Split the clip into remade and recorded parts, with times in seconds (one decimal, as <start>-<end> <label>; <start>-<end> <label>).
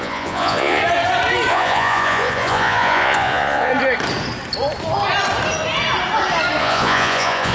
0.0-0.8 remade; 0.8-1.5 recorded; 1.5-3.7 remade; 3.7-6.6 recorded; 6.6-7.5 remade